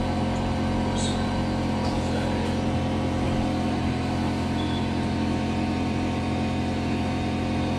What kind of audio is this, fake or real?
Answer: real